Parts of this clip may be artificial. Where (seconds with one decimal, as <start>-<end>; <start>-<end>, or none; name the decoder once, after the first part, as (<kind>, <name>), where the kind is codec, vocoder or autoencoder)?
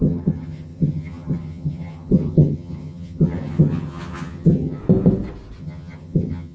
0.0-4.8 (vocoder, HiFi-GAN); 5.6-6.5